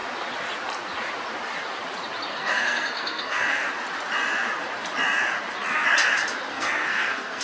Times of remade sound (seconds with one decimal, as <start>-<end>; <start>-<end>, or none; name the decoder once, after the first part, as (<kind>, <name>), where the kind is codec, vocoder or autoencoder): 2.3-3.7 (codec, SNAC); 6.5-7.4